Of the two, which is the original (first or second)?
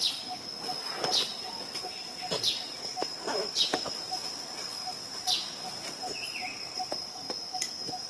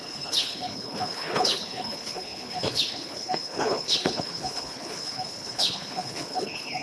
first